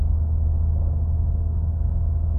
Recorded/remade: remade